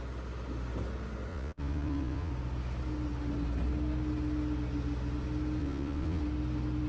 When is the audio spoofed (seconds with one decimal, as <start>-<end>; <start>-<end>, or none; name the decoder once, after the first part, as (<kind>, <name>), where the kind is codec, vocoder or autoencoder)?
1.3-2.3 (vocoder, Vocos); 5.6-6.2